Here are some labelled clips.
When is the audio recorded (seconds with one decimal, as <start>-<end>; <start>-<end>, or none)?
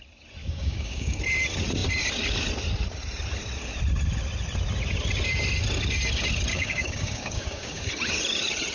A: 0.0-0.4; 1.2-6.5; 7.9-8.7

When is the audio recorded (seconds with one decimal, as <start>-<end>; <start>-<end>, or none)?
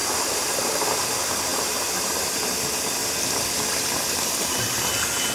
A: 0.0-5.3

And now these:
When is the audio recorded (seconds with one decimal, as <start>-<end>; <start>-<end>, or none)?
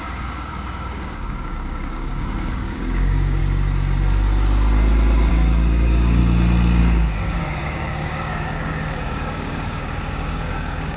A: 3.4-5.3; 6.2-6.8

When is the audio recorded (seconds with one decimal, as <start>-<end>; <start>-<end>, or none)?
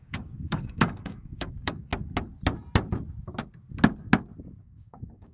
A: 1.9-4.6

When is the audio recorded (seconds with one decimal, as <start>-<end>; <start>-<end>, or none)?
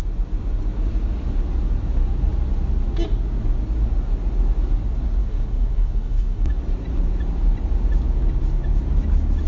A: 0.0-5.2; 6.6-9.5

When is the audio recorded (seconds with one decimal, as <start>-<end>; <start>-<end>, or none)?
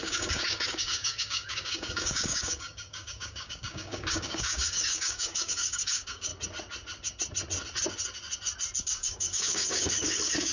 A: 6.3-8.8